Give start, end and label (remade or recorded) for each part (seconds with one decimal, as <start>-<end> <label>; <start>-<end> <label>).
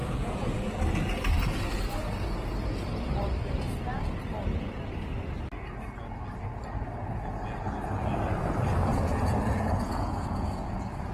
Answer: 0.0-0.8 remade; 0.8-8.9 recorded; 8.9-11.1 remade